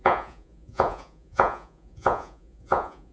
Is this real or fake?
fake